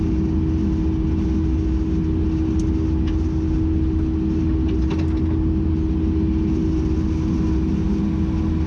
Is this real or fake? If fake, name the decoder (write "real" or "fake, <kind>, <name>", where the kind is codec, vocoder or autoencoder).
real